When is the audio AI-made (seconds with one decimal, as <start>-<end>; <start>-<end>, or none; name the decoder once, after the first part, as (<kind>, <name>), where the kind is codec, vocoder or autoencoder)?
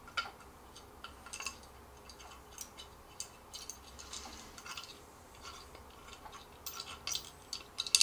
4.7-5.6 (vocoder, BigVGAN v2)